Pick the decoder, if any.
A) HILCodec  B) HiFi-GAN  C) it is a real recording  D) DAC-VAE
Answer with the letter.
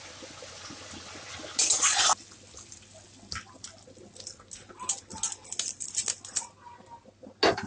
C